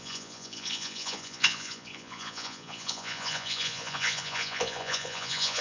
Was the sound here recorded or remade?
remade